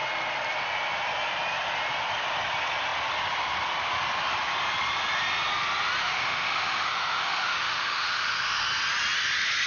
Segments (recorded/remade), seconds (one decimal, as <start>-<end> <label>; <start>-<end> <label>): 0.0-6.0 recorded; 6.0-8.7 remade; 8.7-9.7 recorded